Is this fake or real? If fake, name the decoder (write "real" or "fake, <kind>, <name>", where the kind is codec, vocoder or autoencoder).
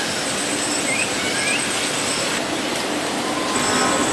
real